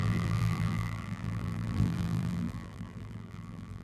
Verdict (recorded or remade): remade